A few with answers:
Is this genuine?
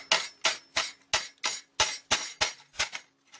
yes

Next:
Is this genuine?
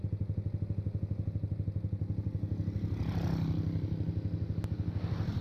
yes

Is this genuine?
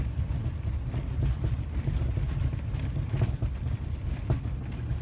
yes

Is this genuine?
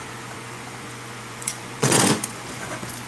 no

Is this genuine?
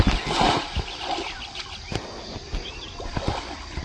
yes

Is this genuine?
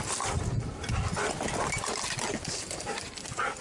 yes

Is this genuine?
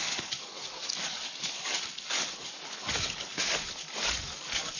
no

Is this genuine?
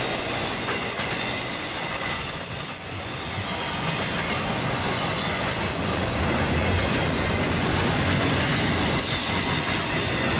no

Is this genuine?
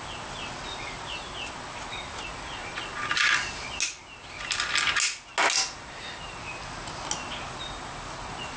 yes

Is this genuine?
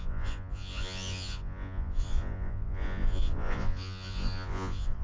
no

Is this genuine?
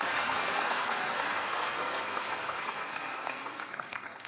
no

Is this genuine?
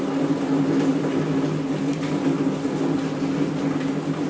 yes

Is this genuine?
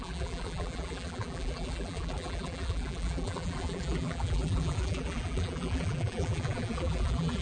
no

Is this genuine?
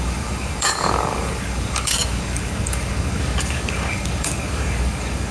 no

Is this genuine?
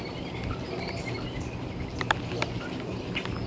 yes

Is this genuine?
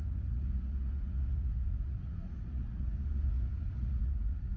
no